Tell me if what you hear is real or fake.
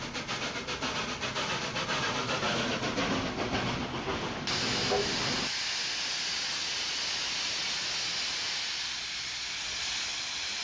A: real